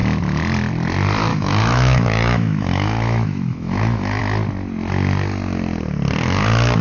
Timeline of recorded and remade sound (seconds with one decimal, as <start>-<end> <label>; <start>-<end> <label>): 0.0-1.3 recorded; 1.3-4.2 remade; 4.2-6.8 recorded